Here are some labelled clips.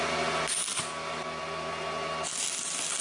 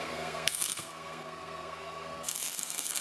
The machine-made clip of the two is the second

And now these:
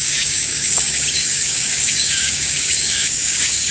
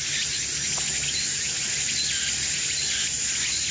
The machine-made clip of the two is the first